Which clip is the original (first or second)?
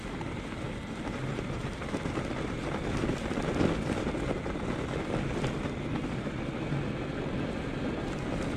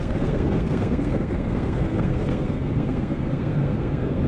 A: first